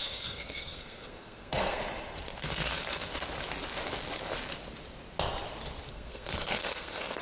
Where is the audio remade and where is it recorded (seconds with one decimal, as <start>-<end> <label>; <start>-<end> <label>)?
0.0-1.8 remade; 1.8-2.3 recorded; 2.3-3.1 remade; 3.1-5.9 recorded; 5.9-7.2 remade